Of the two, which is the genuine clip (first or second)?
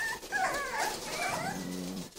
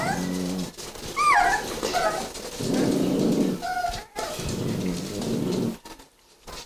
second